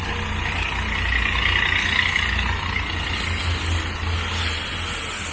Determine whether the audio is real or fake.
real